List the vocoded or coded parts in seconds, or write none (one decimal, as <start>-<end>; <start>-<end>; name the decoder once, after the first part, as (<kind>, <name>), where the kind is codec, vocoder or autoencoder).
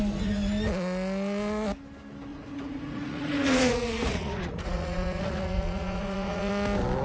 2.3-6.5 (vocoder, Vocos)